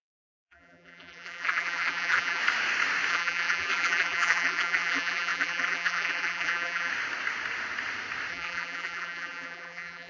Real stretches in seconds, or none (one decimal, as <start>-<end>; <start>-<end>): 2.4-3.1; 6.9-8.3